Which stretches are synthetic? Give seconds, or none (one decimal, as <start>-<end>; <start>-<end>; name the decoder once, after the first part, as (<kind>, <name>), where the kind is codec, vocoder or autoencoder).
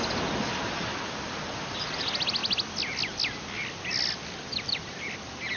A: none